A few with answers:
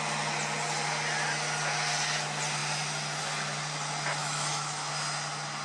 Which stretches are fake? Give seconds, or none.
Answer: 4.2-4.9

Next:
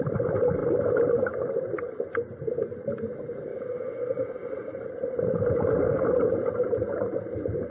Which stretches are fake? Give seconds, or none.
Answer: 3.5-4.0

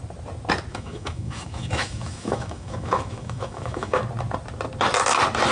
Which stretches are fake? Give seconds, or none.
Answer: 0.7-4.0

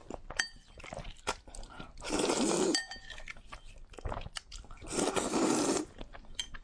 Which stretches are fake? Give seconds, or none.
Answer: none

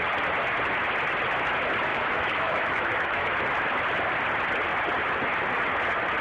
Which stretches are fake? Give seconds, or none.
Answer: 1.9-3.4

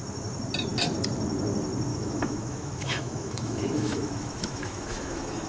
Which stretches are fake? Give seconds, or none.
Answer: 1.9-5.5

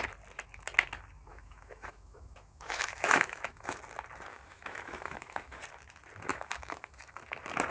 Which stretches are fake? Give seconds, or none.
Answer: 1.3-3.8; 4.3-5.6; 6.3-7.2